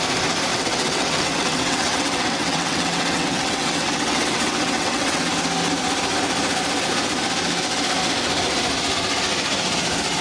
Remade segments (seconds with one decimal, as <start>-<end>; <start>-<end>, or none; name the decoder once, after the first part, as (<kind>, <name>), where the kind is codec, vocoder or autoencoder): 0.5-5.3 (vocoder, WaveNeXt)